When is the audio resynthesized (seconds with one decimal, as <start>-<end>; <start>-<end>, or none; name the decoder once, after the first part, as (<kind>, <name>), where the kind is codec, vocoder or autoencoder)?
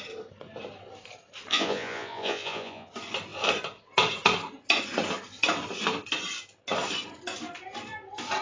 1.5-2.9 (vocoder, Vocos)